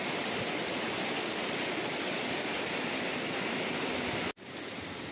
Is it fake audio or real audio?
real